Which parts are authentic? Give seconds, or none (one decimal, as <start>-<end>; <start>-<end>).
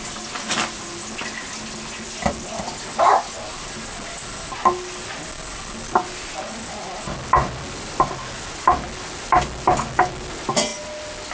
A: 0.0-11.3